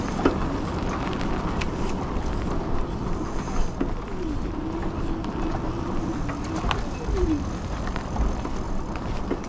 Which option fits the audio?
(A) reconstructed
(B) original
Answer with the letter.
B